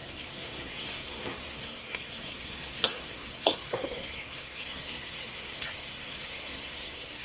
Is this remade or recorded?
remade